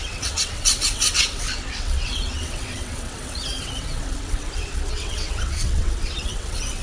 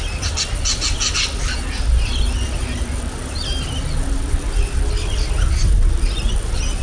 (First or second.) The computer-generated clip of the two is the first